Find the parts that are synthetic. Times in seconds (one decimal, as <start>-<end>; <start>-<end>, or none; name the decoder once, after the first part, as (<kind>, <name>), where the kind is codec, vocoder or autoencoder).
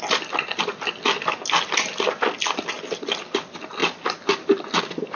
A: none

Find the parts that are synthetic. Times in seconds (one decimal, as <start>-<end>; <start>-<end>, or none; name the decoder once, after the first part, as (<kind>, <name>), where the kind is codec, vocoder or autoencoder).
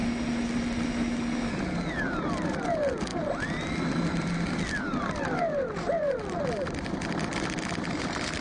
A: none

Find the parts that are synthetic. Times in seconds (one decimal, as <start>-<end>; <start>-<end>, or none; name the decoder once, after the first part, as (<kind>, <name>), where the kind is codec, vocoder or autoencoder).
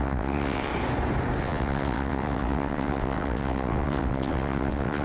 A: 0.0-0.7 (vocoder, WaveNeXt); 1.4-5.0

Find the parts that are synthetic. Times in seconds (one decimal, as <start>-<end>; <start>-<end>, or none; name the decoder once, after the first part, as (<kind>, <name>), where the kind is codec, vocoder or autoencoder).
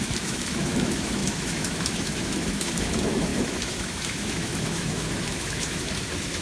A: 0.0-6.4 (autoencoder, DAC-VAE)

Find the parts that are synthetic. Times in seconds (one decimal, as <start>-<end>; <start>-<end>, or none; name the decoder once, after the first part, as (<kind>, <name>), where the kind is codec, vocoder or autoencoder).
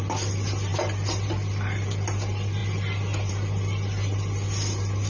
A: none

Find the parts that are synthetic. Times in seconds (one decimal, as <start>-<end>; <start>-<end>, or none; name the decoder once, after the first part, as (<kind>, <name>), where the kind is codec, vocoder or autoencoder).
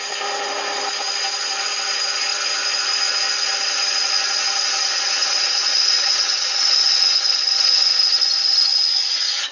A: 5.2-7.0 (vocoder, Vocos); 8.7-9.5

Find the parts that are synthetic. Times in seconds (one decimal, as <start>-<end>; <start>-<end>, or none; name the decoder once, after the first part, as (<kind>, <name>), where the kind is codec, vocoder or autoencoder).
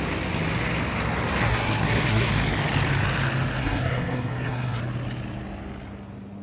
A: 1.5-2.3 (codec, SNAC); 3.6-4.8